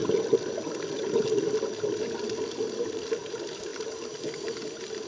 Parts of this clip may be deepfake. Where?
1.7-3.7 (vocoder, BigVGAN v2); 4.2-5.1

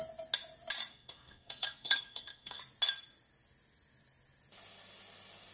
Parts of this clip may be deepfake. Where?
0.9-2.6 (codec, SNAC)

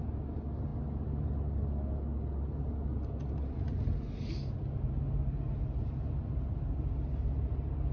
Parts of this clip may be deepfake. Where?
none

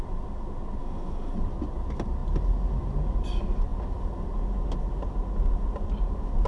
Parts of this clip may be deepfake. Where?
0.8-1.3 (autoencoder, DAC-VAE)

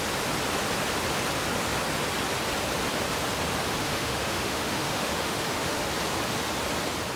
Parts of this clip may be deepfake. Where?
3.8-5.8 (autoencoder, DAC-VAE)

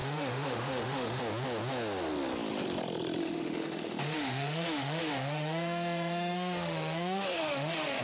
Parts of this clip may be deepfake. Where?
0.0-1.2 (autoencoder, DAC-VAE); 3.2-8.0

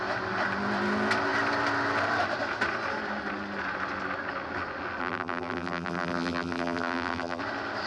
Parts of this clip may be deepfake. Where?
5.0-7.4 (vocoder, BigVGAN v2)